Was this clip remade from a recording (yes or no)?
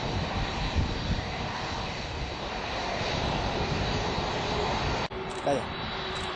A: yes